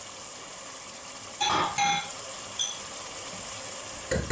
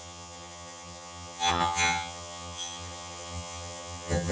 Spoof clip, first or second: second